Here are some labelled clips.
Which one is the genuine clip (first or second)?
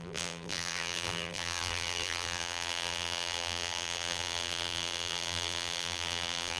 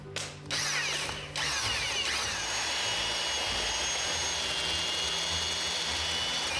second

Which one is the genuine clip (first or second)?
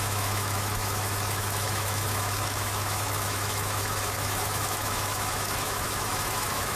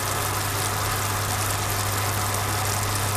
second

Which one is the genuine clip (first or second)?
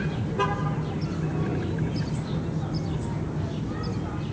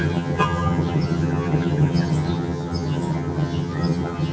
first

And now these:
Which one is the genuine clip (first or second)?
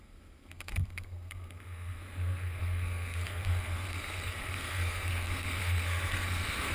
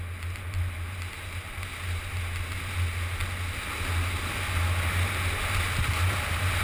second